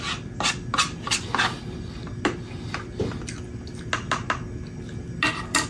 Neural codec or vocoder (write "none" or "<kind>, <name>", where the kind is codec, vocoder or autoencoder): none